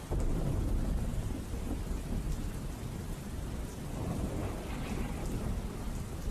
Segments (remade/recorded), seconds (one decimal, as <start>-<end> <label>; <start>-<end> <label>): 0.0-6.3 recorded